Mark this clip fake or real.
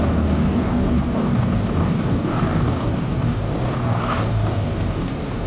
fake